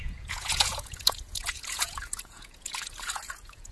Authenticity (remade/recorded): remade